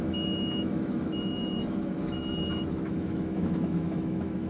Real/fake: fake